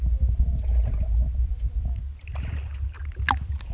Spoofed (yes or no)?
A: no